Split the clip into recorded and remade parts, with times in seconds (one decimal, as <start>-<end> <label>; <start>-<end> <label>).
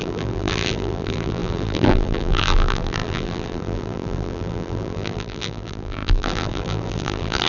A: 0.0-7.5 remade